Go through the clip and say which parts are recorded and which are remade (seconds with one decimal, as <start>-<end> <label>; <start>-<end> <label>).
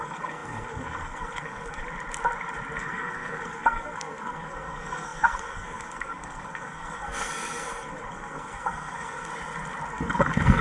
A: 0.0-1.8 remade; 1.8-2.8 recorded; 2.8-9.3 remade; 9.3-9.9 recorded; 9.9-10.6 remade